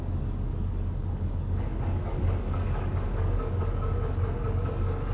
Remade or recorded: remade